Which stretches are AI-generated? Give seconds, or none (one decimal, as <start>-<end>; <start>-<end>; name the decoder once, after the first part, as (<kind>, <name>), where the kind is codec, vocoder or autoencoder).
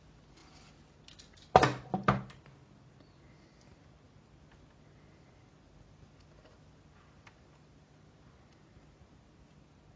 none